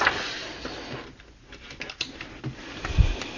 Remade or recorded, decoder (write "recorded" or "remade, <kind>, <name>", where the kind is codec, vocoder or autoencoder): recorded